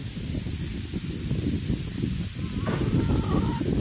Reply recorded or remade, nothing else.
recorded